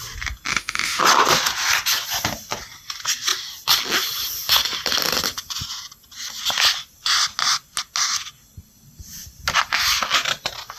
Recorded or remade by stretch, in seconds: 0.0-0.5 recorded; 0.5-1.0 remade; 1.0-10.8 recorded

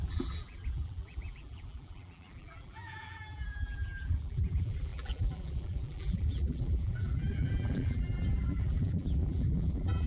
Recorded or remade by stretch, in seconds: 0.0-10.1 remade

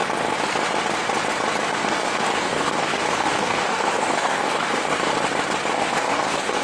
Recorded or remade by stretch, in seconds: 0.0-1.7 recorded; 1.7-5.1 remade; 5.1-5.7 recorded; 5.7-6.6 remade

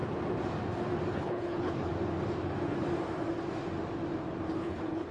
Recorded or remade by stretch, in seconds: 0.0-1.1 recorded; 1.1-1.9 remade; 1.9-4.5 recorded; 4.5-5.1 remade

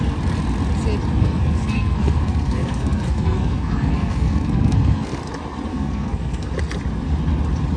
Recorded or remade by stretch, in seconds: 0.0-1.2 recorded; 1.2-5.2 remade; 5.2-5.7 recorded; 5.7-6.5 remade; 6.5-7.8 recorded

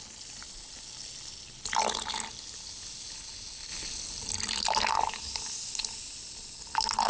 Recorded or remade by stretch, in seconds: 0.0-7.1 recorded

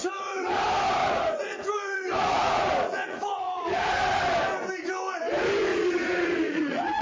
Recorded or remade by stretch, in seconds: 0.0-0.6 remade; 0.6-1.0 recorded; 1.0-4.2 remade; 4.2-5.7 recorded; 5.7-7.0 remade

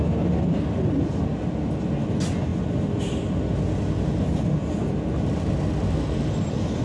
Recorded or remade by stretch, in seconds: 0.0-6.8 recorded